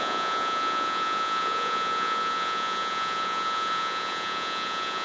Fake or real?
fake